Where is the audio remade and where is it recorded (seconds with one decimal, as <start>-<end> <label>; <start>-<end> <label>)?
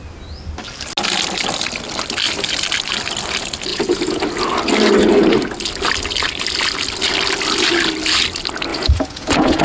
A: 0.0-3.7 recorded; 3.7-4.2 remade; 4.2-8.7 recorded; 8.7-9.6 remade